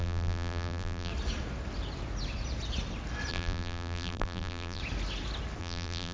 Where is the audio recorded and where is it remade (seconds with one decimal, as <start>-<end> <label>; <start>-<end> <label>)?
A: 0.0-1.1 remade; 1.1-3.3 recorded; 3.3-4.8 remade; 4.8-5.6 recorded; 5.6-6.1 remade